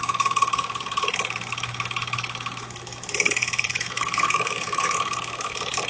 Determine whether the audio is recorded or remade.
remade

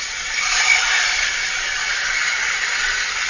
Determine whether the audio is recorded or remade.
recorded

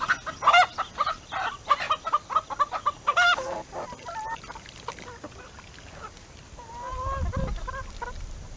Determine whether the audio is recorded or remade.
recorded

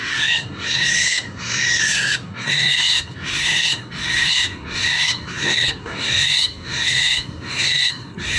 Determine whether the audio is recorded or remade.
remade